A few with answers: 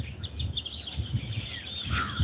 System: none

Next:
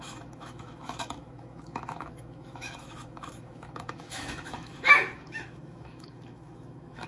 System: autoencoder, DAC-VAE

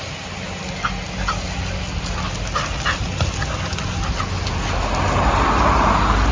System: none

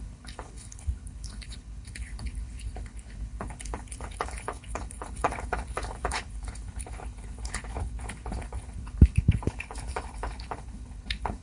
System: codec, HILCodec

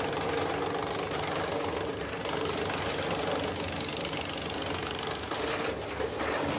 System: none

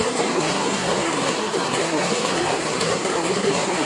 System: codec, SNAC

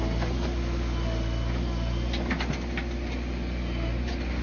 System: none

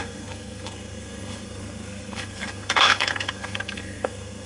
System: codec, SNAC